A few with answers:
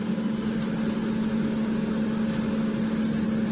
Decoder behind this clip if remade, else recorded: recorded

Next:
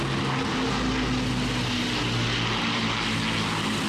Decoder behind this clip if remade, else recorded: recorded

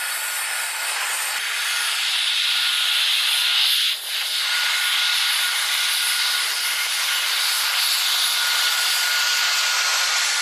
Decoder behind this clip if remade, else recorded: recorded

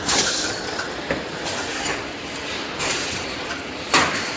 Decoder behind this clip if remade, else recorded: remade, vocoder, BigVGAN v2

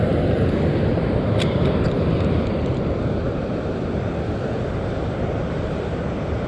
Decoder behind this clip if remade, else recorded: remade, vocoder, BigVGAN v2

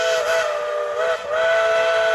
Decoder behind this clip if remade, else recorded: recorded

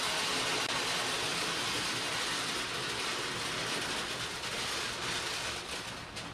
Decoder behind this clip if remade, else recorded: recorded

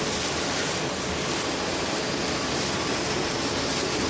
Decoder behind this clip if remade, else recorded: recorded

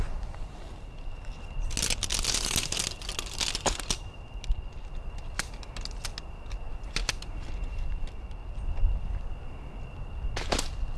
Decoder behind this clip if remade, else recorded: recorded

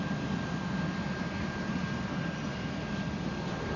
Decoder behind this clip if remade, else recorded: remade, vocoder, BigVGAN v2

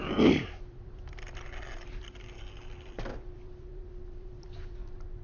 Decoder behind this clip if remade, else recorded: remade, vocoder, BigVGAN v2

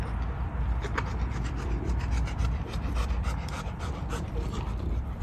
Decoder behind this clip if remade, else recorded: remade, vocoder, BigVGAN v2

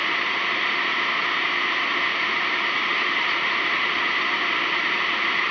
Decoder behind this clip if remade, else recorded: remade, vocoder, BigVGAN v2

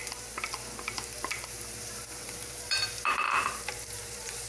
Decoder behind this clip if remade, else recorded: remade, vocoder, BigVGAN v2